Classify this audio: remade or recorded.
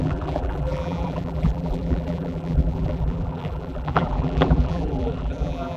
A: remade